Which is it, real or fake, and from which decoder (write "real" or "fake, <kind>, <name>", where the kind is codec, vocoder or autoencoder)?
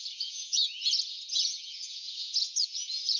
fake, vocoder, Vocos